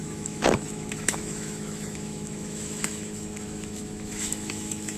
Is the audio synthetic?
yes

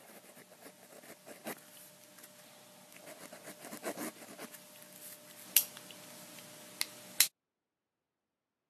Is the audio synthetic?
no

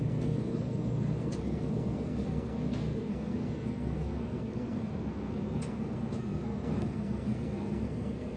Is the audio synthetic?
yes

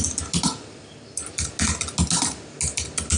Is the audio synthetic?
no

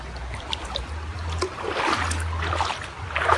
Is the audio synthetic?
no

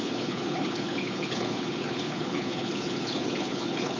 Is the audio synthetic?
yes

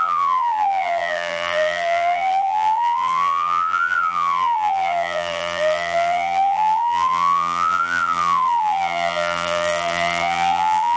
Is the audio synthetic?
yes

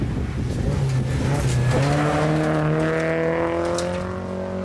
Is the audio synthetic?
no